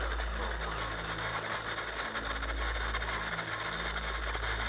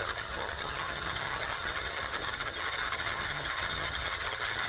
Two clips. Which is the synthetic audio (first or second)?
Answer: second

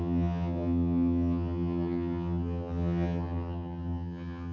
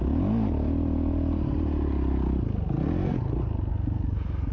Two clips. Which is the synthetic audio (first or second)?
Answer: first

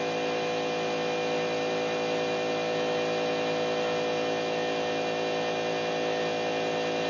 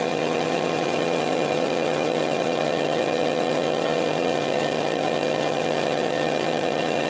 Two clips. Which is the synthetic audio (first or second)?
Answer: second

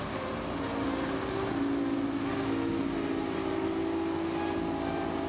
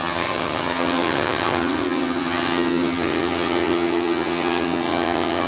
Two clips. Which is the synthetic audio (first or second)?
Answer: second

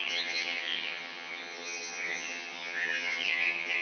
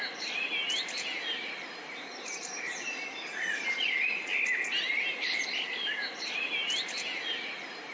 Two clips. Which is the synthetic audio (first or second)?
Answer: first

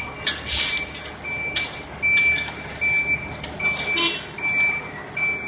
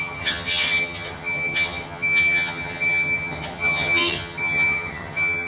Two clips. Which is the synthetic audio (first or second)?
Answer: second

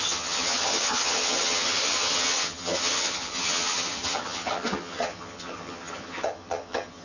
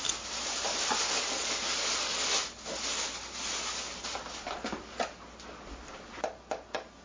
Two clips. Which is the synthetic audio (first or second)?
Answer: first